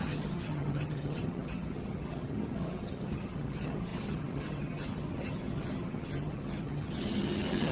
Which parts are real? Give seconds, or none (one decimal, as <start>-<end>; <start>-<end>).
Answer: none